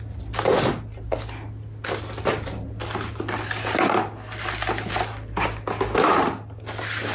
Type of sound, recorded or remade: recorded